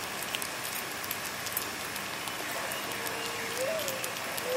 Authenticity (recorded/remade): recorded